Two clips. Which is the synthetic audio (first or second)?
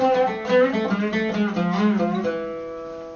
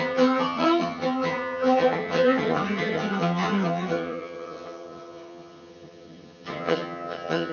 second